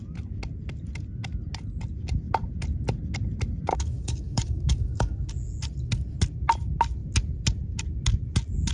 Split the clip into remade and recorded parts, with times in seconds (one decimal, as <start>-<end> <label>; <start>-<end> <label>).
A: 0.0-3.7 recorded; 3.7-5.3 remade; 5.3-8.7 recorded